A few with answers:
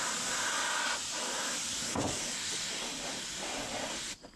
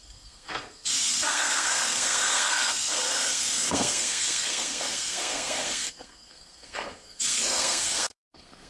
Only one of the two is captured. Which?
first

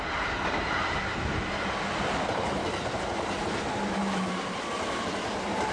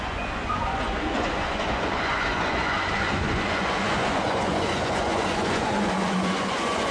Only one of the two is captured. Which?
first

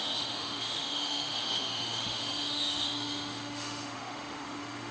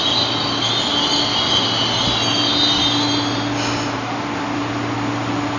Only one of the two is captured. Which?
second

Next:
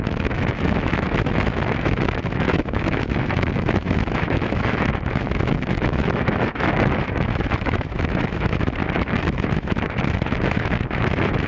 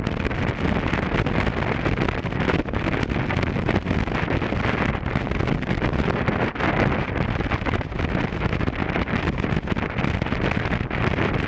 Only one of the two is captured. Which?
second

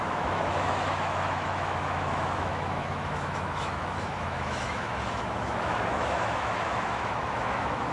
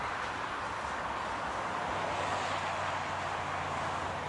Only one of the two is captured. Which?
second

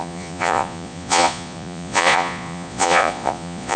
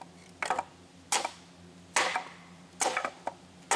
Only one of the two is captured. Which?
second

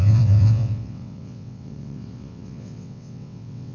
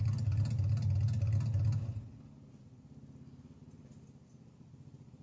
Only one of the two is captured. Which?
second